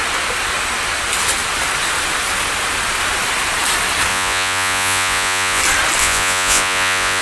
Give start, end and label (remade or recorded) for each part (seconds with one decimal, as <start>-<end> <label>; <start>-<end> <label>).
0.0-4.1 recorded; 4.1-5.6 remade; 5.6-6.0 recorded; 6.0-7.2 remade